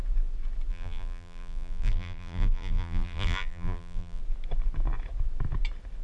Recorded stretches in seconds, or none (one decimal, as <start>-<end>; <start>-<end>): 0.0-0.7; 4.2-6.0